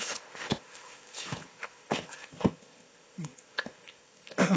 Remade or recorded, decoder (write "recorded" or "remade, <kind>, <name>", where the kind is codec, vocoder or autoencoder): remade, codec, ZipCodec